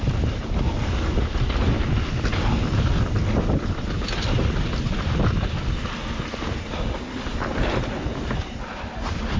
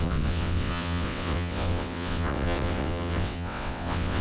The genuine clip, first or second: first